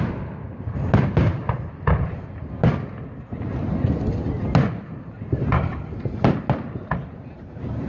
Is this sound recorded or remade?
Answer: recorded